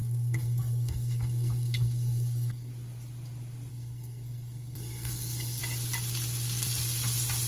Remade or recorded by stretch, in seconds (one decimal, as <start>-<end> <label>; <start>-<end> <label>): 0.0-2.7 remade; 2.7-3.7 recorded; 3.7-5.6 remade; 5.6-7.5 recorded